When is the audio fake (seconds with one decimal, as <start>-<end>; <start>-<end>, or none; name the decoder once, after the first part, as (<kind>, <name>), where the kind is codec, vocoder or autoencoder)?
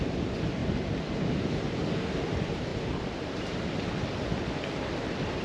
0.0-0.6 (vocoder, BigVGAN v2); 1.3-1.8; 2.3-2.7